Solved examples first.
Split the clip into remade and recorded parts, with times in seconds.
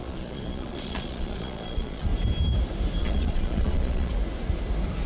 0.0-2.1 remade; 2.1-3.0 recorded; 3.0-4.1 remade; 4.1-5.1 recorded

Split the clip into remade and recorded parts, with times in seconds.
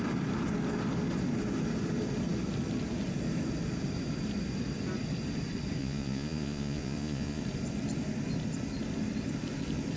0.0-5.8 recorded; 5.8-7.4 remade; 7.4-10.0 recorded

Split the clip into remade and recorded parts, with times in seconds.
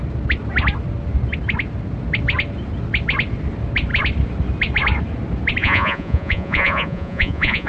0.0-5.6 recorded; 5.6-7.7 remade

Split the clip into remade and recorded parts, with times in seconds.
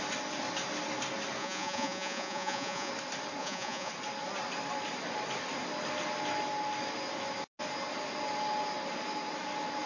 0.0-1.4 recorded; 1.4-2.9 remade; 2.9-3.4 recorded; 3.4-3.9 remade; 3.9-9.9 recorded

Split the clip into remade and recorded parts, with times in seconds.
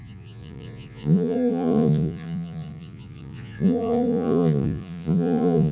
0.0-5.7 remade